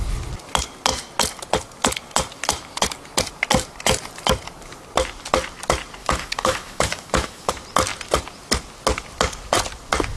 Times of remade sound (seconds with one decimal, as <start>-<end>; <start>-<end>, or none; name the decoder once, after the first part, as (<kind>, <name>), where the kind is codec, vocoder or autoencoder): 6.0-7.5 (autoencoder, DAC-VAE)